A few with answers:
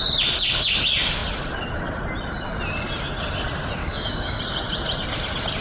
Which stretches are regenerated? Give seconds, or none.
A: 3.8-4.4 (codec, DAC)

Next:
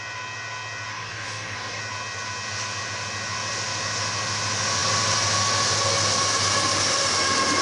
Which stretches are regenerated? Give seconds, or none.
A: 0.9-1.8 (codec, DAC)

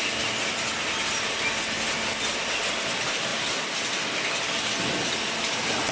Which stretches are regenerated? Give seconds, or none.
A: none

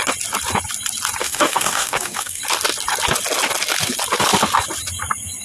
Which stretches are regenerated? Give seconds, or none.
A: 1.2-2.4 (codec, DAC)

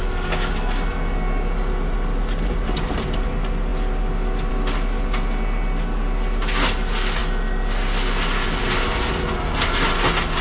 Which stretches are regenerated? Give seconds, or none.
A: none

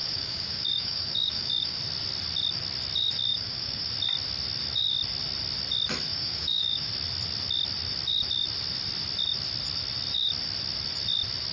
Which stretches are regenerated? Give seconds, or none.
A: 0.0-1.8 (codec, DAC); 3.3-3.9; 6.1-6.9

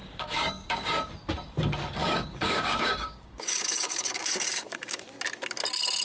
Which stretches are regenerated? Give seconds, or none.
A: 0.0-1.1 (codec, DAC); 2.0-5.0

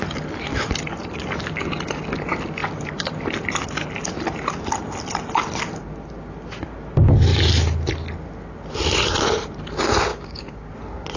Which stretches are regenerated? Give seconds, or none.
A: 10.1-10.7 (codec, DAC)